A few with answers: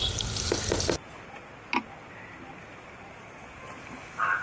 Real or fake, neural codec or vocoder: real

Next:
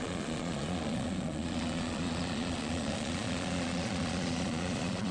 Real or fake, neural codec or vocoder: fake, vocoder, Vocos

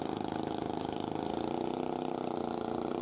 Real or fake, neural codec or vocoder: real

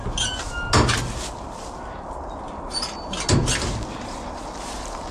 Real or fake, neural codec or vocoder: real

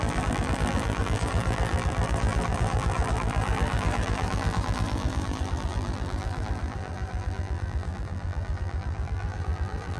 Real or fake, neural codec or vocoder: fake, vocoder, BigVGAN v2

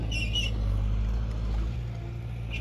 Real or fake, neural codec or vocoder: real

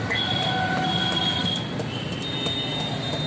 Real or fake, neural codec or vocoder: real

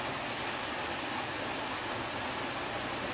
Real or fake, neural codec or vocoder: real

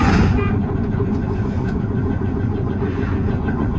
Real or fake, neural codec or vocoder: fake, vocoder, Vocos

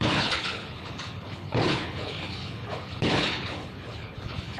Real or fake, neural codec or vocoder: fake, codec, HILCodec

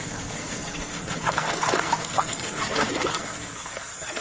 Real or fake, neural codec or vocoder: fake, codec, SNAC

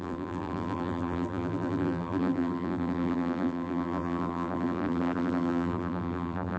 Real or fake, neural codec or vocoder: fake, vocoder, BigVGAN v2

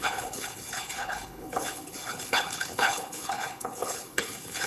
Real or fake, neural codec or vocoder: fake, codec, HILCodec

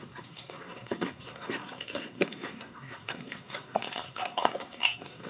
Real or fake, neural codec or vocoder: fake, codec, SNAC